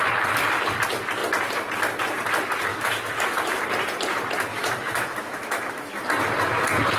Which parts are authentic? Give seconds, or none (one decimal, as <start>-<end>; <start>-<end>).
0.0-2.7; 3.6-4.5; 6.0-7.0

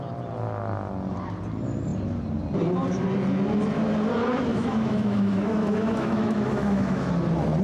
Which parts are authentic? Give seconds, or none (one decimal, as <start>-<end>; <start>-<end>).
0.0-4.5; 7.1-7.6